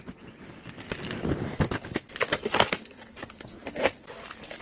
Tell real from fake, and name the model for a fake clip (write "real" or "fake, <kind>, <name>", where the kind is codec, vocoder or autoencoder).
real